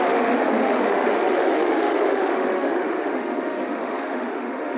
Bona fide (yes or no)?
no